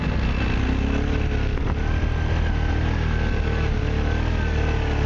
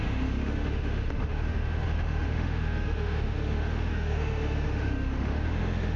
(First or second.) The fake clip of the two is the second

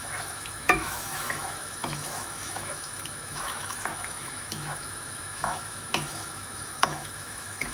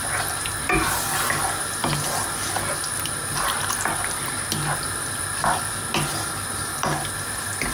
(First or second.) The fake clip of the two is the first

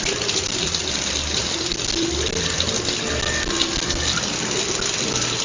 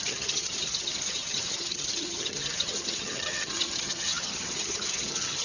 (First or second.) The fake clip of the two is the second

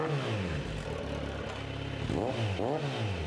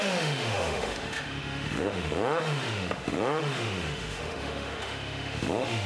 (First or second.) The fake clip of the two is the second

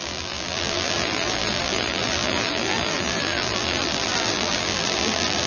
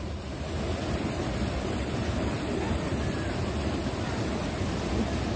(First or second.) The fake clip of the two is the first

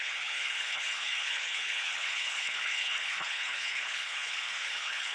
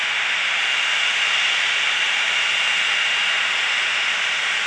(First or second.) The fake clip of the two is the first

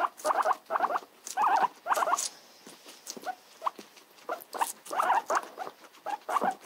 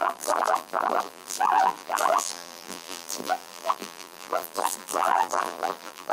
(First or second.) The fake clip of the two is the second